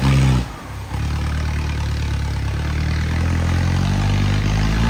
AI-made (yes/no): no